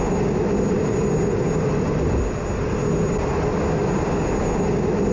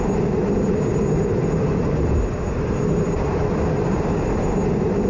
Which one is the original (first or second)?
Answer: first